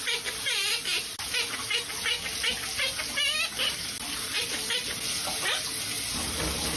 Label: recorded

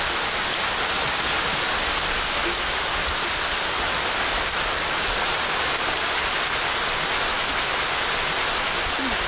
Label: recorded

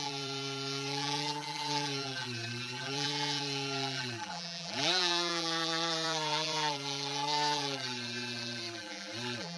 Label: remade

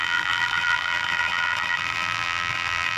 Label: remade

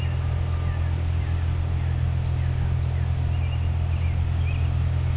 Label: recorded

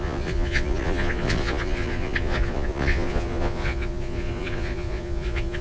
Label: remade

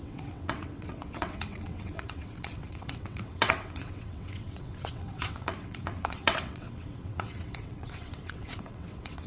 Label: remade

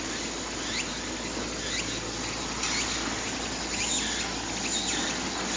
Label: recorded